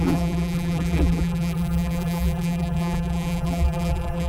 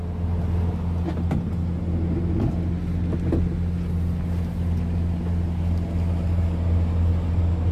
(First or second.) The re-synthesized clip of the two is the first